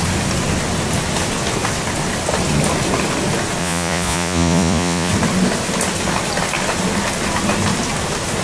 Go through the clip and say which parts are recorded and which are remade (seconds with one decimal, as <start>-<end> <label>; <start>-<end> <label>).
0.0-3.6 recorded; 3.6-5.1 remade; 5.1-8.4 recorded